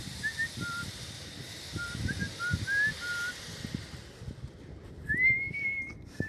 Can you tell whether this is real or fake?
real